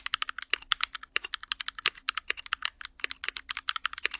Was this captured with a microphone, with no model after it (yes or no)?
yes